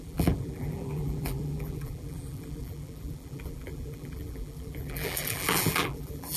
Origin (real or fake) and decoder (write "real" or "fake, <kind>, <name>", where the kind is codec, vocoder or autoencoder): fake, vocoder, BigVGAN v2